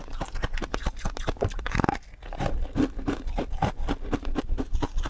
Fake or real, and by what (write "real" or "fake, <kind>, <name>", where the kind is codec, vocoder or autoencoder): real